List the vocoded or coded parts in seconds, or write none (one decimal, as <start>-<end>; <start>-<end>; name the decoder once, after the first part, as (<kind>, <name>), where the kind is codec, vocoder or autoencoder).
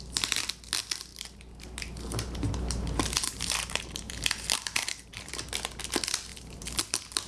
1.1-5.3 (vocoder, BigVGAN v2); 6.3-7.3